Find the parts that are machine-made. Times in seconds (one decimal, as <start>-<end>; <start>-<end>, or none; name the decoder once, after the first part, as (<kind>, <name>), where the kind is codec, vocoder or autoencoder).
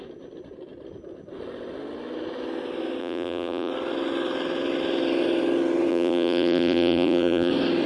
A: 3.0-3.7 (vocoder, BigVGAN v2); 5.9-7.5